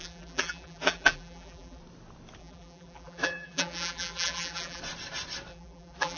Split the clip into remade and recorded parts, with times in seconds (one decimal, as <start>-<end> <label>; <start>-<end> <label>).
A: 0.0-1.8 remade; 1.8-2.4 recorded; 2.4-4.8 remade; 4.8-5.5 recorded; 5.5-6.2 remade